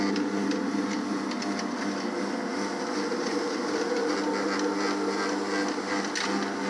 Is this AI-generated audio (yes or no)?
no